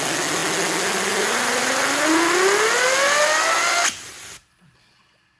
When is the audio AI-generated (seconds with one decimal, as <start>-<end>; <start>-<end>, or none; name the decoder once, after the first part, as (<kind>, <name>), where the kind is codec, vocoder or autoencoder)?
none

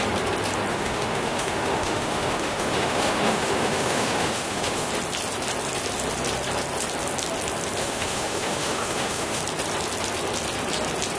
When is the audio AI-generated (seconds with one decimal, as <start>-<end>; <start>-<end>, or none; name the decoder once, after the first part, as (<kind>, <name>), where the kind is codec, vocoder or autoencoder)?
0.7-4.9 (autoencoder, DAC-VAE); 7.8-9.4